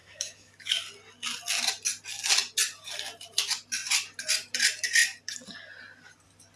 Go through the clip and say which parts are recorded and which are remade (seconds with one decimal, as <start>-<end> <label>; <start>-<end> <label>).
0.0-0.8 remade; 0.8-6.6 recorded